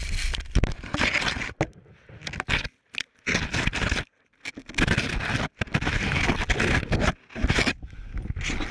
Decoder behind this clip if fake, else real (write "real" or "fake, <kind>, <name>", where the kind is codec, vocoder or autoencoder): real